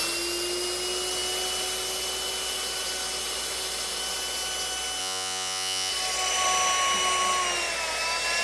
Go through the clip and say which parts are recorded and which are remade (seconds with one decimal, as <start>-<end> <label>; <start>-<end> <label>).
0.0-5.0 recorded; 5.0-5.9 remade; 5.9-8.4 recorded